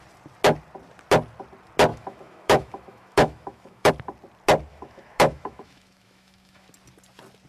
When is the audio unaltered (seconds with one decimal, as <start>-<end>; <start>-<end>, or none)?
0.0-1.9; 3.9-4.7; 6.7-7.5